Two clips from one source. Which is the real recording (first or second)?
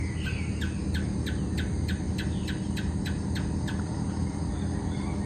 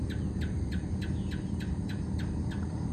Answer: first